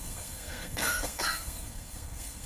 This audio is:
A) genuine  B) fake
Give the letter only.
B